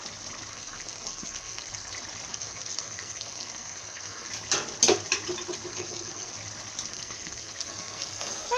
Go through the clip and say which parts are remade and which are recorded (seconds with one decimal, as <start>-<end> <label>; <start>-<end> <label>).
0.0-0.5 recorded; 0.5-1.9 remade; 1.9-2.3 recorded; 2.3-4.3 remade; 4.3-5.7 recorded; 5.7-6.3 remade; 6.3-6.9 recorded; 6.9-8.6 remade